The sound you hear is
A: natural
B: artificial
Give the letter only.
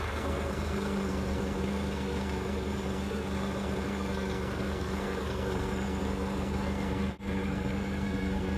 B